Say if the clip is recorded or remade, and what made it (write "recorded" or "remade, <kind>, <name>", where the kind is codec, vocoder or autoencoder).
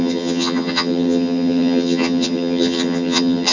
remade, vocoder, HiFi-GAN